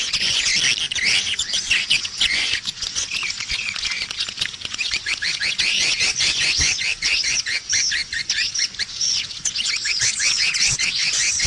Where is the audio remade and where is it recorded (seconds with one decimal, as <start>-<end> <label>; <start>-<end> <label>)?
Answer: 0.0-0.5 remade; 0.5-1.2 recorded; 1.2-11.5 remade